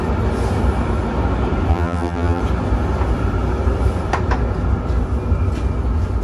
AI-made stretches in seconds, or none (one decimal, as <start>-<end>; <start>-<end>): 1.7-2.4